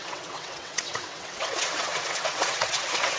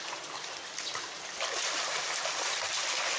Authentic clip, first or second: second